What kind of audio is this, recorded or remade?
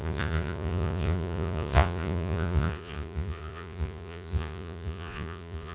remade